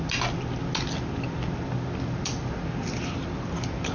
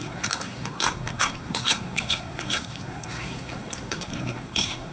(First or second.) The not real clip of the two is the second